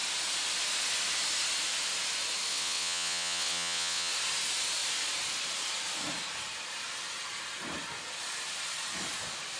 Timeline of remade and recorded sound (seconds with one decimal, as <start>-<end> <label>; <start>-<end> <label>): 0.0-2.5 recorded; 2.5-4.1 remade; 4.1-9.6 recorded